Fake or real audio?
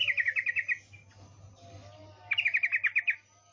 real